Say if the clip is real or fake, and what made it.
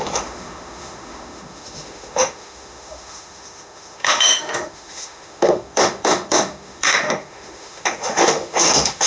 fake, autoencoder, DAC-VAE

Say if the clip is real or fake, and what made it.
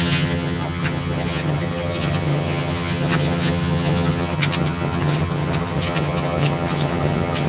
fake, vocoder, HiFi-GAN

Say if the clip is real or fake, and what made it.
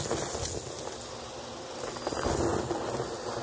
real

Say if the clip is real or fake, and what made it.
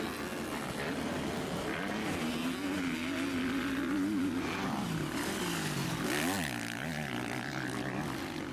real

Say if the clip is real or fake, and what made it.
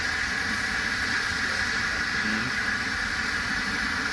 real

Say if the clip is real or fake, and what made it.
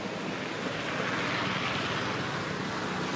real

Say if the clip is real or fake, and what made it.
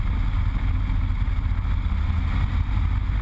real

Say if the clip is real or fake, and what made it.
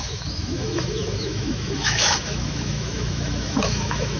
fake, autoencoder, DAC-VAE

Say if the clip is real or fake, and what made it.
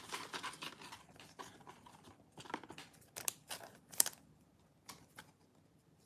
real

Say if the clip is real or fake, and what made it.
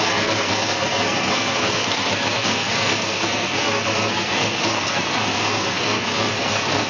fake, codec, SNAC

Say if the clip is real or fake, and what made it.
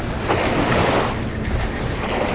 real